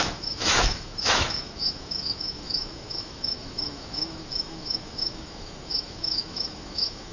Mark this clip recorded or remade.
remade